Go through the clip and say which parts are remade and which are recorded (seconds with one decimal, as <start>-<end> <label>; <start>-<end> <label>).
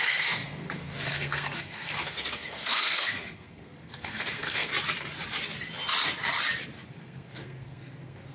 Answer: 0.0-4.7 remade; 4.7-6.9 recorded; 6.9-8.3 remade